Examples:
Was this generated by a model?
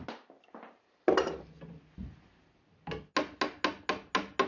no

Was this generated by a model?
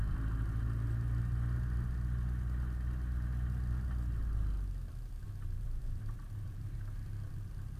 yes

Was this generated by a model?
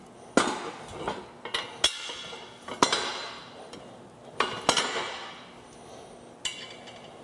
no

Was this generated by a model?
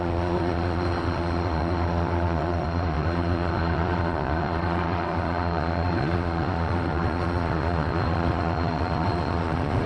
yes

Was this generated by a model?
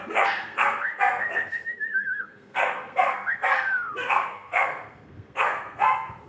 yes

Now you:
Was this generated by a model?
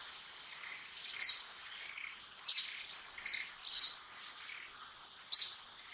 no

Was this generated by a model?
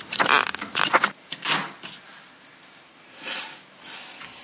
no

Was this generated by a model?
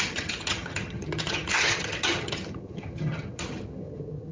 yes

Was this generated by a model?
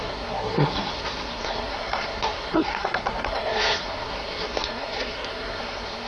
yes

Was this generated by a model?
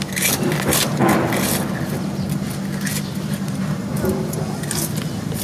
no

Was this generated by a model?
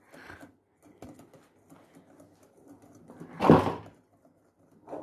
no